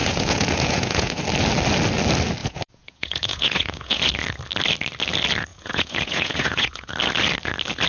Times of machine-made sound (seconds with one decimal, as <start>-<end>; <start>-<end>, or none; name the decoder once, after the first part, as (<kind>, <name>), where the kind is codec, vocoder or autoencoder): 0.0-1.2 (vocoder, Vocos); 2.4-4.0; 5.5-6.9